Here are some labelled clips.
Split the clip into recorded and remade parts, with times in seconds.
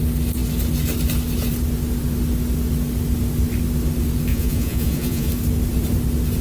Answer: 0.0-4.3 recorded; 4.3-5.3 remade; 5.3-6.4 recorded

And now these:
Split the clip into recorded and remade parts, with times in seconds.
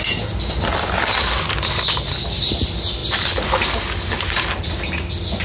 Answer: 0.0-5.4 recorded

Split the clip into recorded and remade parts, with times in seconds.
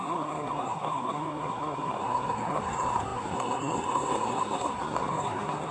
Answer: 0.0-5.7 remade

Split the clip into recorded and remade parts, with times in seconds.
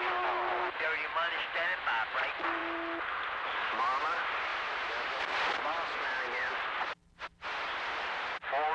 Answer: 0.0-8.7 recorded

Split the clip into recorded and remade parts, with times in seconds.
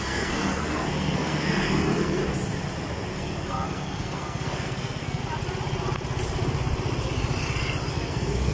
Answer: 0.0-2.2 remade; 2.2-3.1 recorded; 3.1-5.2 remade; 5.2-7.9 recorded; 7.9-8.5 remade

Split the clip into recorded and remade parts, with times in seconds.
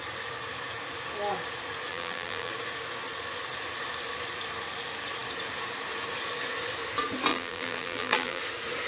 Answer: 0.0-1.9 recorded; 1.9-2.5 remade; 2.5-7.3 recorded; 7.3-8.4 remade; 8.4-8.9 recorded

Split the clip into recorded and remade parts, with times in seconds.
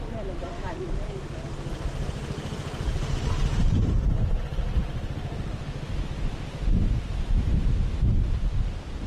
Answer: 0.0-2.9 recorded; 2.9-5.9 remade; 5.9-9.1 recorded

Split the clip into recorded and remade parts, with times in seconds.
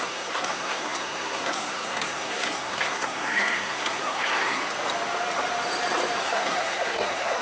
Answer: 0.0-4.6 remade; 4.6-6.2 recorded; 6.2-7.4 remade